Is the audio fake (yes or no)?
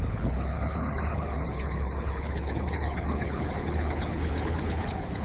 yes